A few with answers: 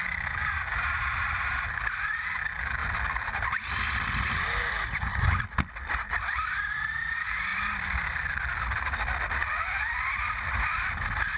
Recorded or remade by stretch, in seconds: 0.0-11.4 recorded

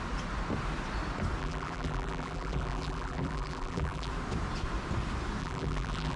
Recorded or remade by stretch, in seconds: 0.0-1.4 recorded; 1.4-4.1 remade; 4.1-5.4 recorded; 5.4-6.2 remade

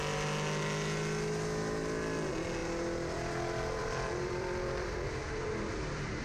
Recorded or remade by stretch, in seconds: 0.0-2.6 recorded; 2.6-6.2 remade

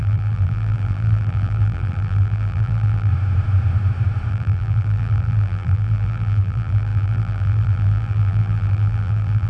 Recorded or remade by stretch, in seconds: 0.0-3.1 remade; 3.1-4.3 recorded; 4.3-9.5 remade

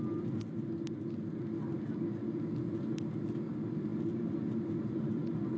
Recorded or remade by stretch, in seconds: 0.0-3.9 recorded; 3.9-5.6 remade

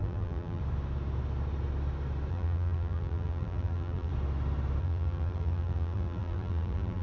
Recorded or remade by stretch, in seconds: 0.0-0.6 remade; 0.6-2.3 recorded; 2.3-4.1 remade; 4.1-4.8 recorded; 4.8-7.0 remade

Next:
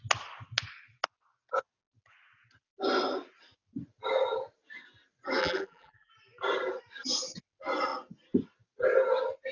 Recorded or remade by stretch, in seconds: 0.0-5.4 recorded; 5.4-6.1 remade; 6.1-9.5 recorded